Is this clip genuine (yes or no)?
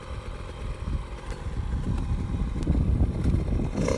yes